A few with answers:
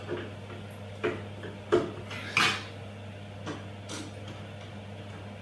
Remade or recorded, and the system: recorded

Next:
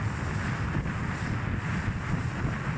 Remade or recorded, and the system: recorded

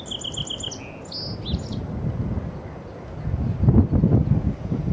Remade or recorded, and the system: recorded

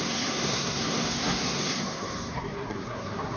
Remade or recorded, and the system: remade, codec, SNAC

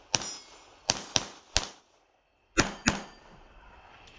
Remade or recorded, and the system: recorded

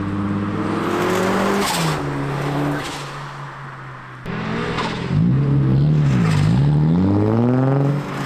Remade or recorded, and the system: recorded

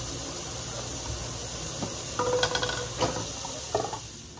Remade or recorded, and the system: recorded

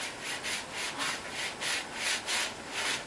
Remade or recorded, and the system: recorded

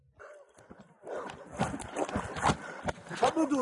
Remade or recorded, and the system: recorded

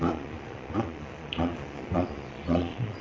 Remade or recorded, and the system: remade, vocoder, Vocos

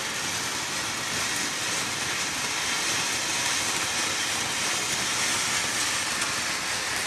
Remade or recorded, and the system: recorded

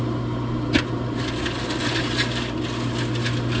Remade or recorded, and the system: recorded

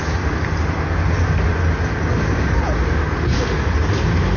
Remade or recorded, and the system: recorded